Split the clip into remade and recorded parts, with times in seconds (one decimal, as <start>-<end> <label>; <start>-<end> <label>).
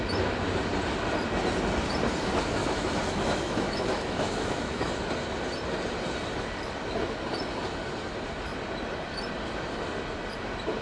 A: 0.0-2.6 recorded; 2.6-5.0 remade; 5.0-10.8 recorded